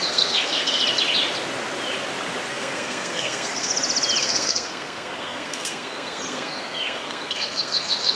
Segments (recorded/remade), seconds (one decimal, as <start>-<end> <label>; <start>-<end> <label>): 0.0-0.8 remade; 0.8-2.5 recorded; 2.5-3.7 remade; 3.7-4.2 recorded; 4.2-8.2 remade